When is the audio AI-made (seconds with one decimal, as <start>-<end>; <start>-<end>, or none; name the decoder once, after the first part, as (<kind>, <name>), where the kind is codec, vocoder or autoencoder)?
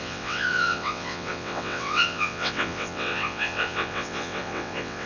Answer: 0.0-5.1 (vocoder, WaveNeXt)